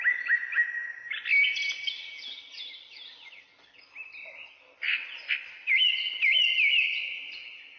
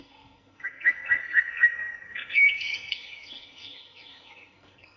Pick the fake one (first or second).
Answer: second